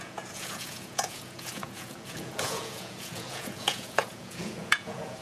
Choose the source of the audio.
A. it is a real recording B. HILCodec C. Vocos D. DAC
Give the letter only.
C